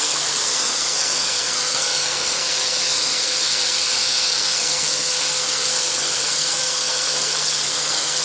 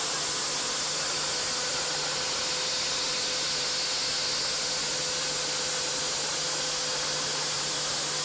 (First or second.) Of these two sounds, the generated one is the first